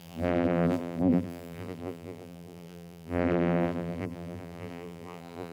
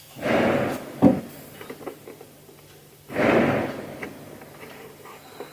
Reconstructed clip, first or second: first